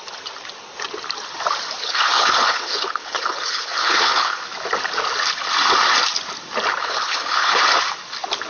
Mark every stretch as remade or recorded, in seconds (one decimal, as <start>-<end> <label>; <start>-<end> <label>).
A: 0.0-1.8 recorded; 1.8-4.4 remade; 4.4-6.8 recorded; 6.8-7.6 remade; 7.6-8.5 recorded